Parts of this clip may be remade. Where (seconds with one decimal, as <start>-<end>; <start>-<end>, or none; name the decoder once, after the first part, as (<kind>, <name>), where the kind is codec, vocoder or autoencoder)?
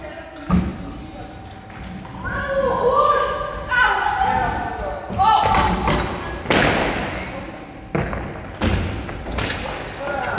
none